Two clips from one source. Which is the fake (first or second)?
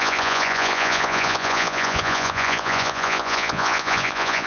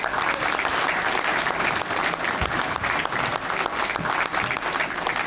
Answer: first